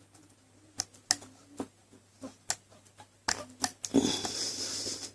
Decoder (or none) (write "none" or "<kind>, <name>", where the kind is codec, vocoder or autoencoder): none